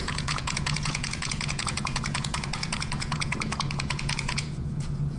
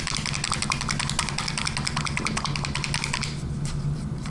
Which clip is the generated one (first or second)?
first